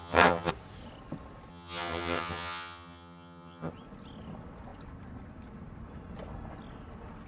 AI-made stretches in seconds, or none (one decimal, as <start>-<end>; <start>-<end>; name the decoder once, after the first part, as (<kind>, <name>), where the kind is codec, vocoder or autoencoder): 0.0-0.5 (vocoder, HiFi-GAN); 1.5-3.7

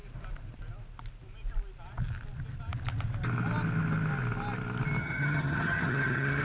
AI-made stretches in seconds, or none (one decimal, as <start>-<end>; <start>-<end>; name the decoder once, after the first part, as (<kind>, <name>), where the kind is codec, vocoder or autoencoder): 5.0-6.4 (vocoder, HiFi-GAN)

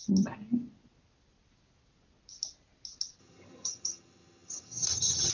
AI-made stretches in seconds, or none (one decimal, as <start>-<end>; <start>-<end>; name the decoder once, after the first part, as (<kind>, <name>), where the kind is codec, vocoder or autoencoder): 3.2-5.3 (vocoder, HiFi-GAN)

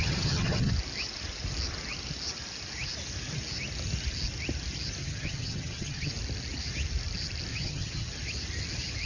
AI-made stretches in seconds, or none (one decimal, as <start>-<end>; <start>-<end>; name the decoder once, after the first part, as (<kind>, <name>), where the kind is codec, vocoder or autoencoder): 0.0-0.7 (vocoder, HiFi-GAN); 5.0-6.1; 7.5-8.1

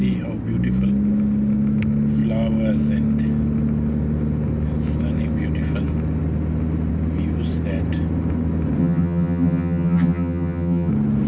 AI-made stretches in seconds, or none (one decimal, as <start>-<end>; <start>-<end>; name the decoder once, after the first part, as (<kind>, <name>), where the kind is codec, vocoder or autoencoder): 8.8-10.9 (vocoder, HiFi-GAN)

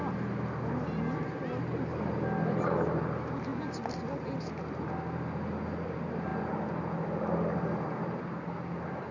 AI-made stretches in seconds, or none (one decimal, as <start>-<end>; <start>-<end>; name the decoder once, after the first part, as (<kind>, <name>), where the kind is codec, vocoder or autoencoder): none

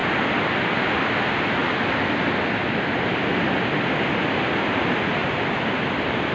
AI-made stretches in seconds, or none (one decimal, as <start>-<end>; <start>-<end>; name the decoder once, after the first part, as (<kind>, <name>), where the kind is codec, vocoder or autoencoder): none